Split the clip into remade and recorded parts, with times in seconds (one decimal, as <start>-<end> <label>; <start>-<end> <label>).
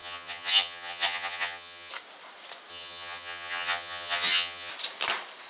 0.0-1.9 remade; 1.9-2.7 recorded; 2.7-4.7 remade; 4.7-5.5 recorded